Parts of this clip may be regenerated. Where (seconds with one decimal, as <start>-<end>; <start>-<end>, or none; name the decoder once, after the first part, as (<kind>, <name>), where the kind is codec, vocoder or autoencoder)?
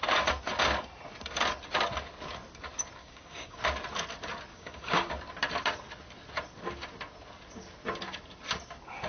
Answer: 3.0-3.6 (codec, DAC); 4.5-5.1